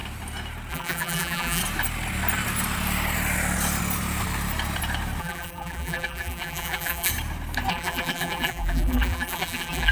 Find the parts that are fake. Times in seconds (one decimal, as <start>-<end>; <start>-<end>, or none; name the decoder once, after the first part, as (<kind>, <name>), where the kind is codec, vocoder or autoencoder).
0.7-1.6 (vocoder, BigVGAN v2); 5.2-7.1; 7.7-9.9